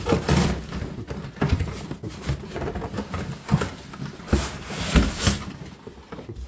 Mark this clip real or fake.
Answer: real